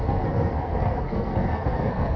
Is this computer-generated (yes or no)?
yes